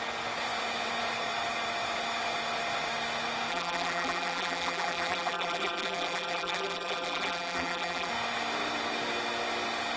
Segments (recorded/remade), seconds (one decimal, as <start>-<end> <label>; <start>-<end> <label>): 0.0-3.5 recorded; 3.5-8.1 remade; 8.1-10.0 recorded